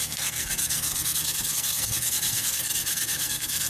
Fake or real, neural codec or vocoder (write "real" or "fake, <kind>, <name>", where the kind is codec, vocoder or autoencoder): fake, codec, SNAC